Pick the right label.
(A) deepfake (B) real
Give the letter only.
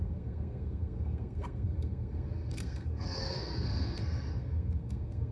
A